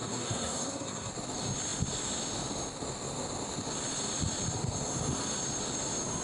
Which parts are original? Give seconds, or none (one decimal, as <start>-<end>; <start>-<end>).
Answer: 1.1-6.2